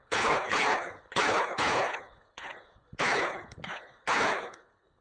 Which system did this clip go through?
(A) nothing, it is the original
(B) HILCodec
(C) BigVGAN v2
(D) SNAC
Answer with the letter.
B